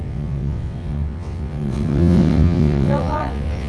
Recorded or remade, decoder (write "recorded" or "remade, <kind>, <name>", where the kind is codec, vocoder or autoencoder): remade, vocoder, WaveNeXt